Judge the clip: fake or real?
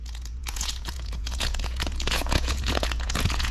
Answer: fake